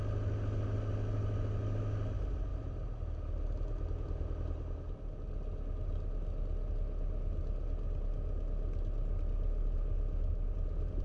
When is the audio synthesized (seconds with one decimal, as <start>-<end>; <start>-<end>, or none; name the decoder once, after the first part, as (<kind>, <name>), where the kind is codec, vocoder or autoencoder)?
none